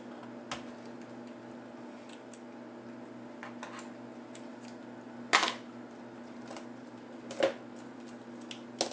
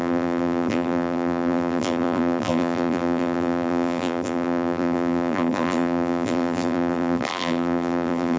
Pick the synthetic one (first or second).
second